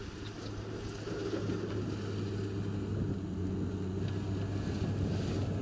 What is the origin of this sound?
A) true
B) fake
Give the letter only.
A